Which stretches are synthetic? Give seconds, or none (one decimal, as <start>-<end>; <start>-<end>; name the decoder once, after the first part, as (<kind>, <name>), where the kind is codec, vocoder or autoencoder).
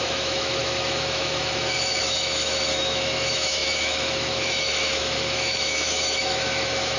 0.0-7.0 (autoencoder, DAC-VAE)